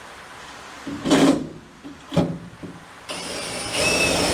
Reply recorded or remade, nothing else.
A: remade